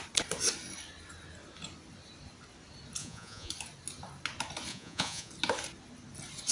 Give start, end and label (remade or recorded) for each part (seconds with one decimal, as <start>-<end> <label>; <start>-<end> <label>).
0.0-3.0 recorded; 3.0-3.5 remade; 3.5-4.7 recorded; 4.7-5.3 remade; 5.3-6.5 recorded